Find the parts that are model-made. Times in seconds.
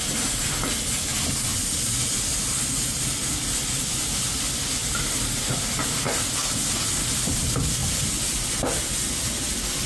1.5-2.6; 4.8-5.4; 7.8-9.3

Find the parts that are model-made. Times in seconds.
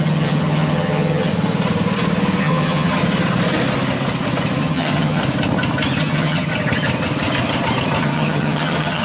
0.0-1.3; 2.4-3.0; 4.6-5.2; 6.0-6.5; 8.0-9.0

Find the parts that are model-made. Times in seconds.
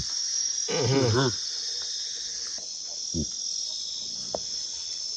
none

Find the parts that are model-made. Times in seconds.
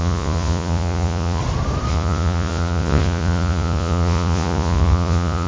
0.0-1.4; 1.9-5.5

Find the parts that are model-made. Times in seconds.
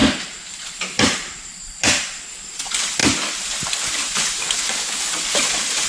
0.0-2.6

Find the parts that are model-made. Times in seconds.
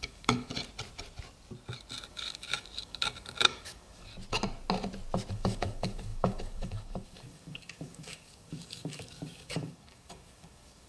0.0-0.5; 2.1-4.1; 5.3-10.9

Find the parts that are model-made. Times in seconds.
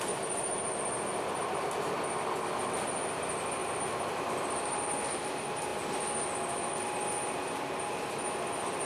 3.6-4.8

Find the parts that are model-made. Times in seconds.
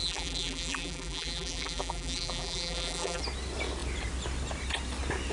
0.0-3.2